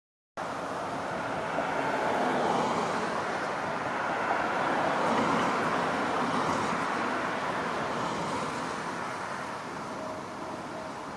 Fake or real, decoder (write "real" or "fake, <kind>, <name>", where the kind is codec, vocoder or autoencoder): real